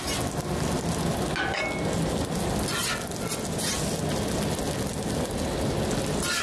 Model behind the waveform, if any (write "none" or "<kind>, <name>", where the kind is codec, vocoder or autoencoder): none